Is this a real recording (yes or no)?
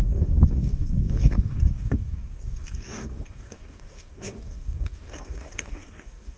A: no